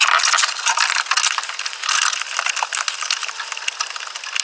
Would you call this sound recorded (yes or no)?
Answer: yes